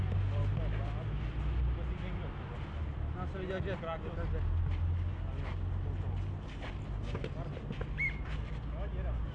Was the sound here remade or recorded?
recorded